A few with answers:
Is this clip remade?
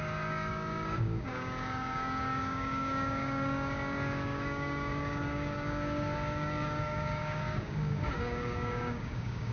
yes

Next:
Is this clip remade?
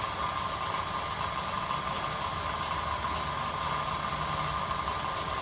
no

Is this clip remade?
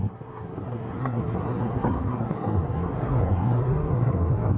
yes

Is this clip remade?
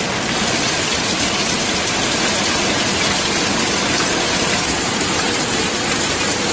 yes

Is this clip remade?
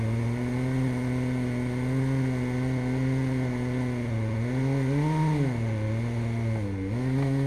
no